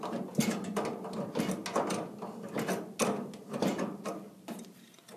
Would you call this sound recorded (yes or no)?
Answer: yes